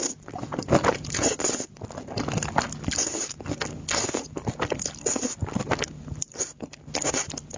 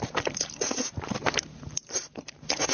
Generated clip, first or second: second